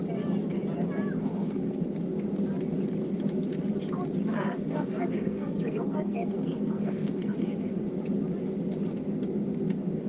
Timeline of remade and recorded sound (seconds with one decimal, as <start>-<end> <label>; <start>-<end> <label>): 0.0-1.2 recorded; 1.2-1.8 remade; 1.8-4.3 recorded; 4.3-7.8 remade; 7.8-10.1 recorded